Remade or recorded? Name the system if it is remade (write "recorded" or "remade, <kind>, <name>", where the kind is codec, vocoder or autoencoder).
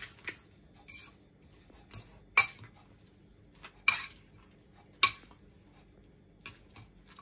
recorded